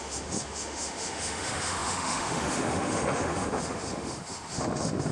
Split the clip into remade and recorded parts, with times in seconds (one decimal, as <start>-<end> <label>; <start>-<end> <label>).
0.0-5.1 remade